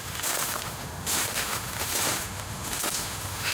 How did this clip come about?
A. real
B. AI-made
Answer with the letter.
B